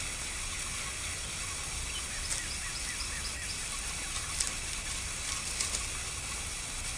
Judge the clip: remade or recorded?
recorded